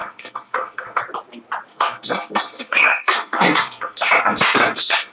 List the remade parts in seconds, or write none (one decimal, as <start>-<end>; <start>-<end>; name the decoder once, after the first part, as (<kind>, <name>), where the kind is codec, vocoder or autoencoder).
0.0-1.0 (codec, SNAC); 1.7-5.1